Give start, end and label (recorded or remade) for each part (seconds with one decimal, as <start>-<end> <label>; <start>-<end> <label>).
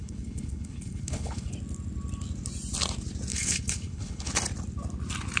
0.0-1.5 remade; 1.5-3.3 recorded; 3.3-4.3 remade; 4.3-5.4 recorded